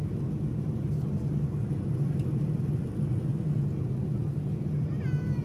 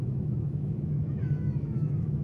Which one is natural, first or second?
first